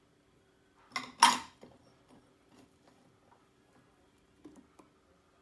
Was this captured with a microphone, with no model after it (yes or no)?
yes